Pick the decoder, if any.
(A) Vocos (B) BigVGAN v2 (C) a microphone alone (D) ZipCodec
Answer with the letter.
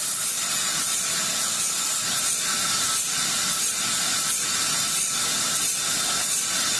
C